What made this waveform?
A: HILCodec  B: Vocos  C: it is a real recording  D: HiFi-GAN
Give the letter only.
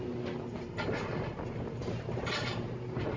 C